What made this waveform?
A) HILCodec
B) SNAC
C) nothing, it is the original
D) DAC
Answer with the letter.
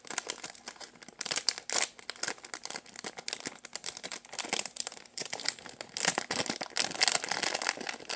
C